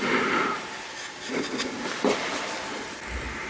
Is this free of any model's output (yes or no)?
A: yes